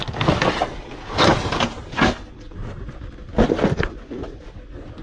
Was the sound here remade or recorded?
recorded